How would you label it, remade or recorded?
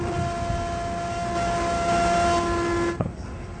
recorded